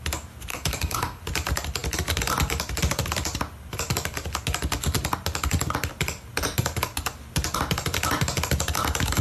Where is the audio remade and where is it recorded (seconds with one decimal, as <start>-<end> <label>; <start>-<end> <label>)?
0.0-0.5 recorded; 0.5-1.2 remade; 1.2-9.2 recorded

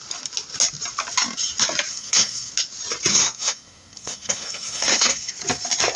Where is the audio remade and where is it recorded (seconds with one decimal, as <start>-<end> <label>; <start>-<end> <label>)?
0.0-1.9 recorded; 1.9-2.5 remade; 2.5-3.1 recorded; 3.1-5.3 remade; 5.3-6.0 recorded

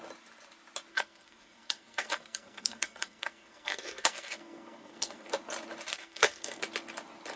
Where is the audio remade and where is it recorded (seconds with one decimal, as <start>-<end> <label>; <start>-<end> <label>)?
0.0-0.9 recorded; 0.9-5.3 remade; 5.3-5.9 recorded; 5.9-6.6 remade; 6.6-7.4 recorded

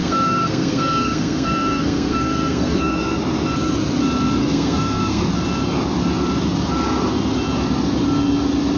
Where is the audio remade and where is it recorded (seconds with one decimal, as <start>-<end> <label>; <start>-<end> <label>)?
0.0-3.2 remade; 3.2-4.4 recorded; 4.4-5.3 remade; 5.3-8.8 recorded

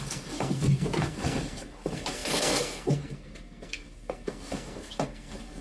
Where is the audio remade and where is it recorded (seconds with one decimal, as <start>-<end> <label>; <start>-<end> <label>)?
0.0-5.6 remade

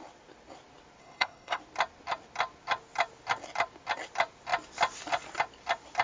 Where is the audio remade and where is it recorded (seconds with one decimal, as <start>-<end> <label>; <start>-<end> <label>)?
0.0-1.0 recorded; 1.0-1.6 remade; 1.6-6.0 recorded